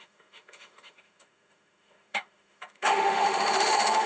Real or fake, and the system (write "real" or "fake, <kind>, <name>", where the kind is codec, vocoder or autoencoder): fake, autoencoder, DAC-VAE